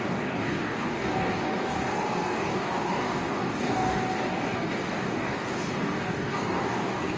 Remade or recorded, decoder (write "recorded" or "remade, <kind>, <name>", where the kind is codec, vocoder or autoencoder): remade, codec, DAC